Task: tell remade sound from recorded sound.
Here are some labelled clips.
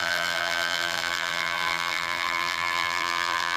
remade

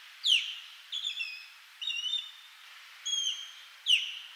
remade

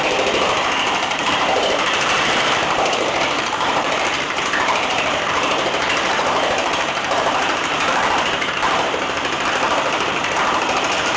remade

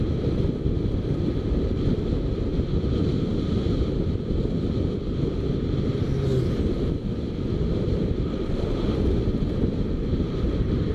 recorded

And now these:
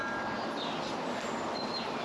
recorded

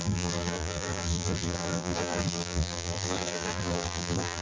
remade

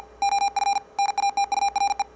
recorded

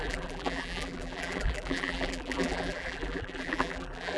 remade